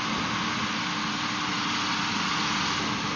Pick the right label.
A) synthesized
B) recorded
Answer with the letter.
B